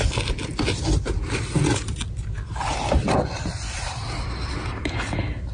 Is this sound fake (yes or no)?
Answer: no